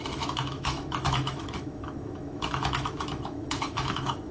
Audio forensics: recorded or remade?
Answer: remade